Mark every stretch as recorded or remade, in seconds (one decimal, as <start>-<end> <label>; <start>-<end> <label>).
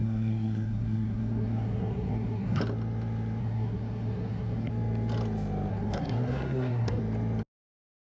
0.0-2.6 remade; 2.6-3.4 recorded; 3.4-4.7 remade; 4.7-5.7 recorded; 5.7-7.0 remade; 7.0-8.0 recorded